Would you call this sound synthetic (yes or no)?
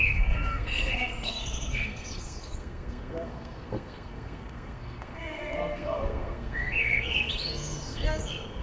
yes